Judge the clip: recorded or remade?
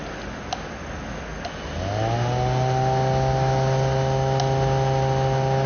recorded